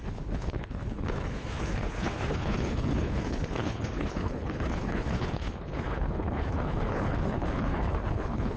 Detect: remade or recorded remade